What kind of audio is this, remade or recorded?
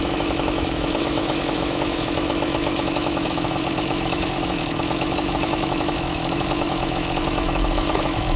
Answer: remade